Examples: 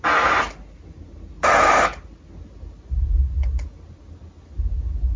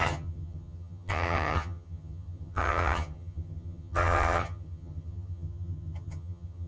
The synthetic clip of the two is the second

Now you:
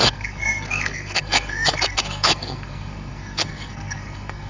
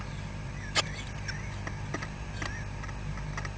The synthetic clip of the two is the first